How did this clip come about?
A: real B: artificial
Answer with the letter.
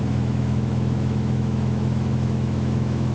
B